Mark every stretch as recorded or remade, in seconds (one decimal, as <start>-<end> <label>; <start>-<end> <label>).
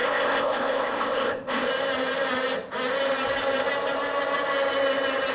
0.0-1.7 remade; 1.7-5.3 recorded